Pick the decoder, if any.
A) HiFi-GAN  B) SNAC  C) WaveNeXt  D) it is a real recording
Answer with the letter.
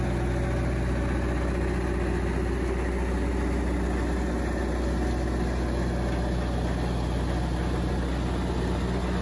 D